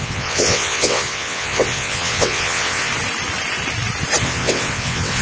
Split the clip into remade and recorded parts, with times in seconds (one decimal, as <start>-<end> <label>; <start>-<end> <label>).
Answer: 0.0-2.9 remade; 2.9-4.2 recorded; 4.2-5.2 remade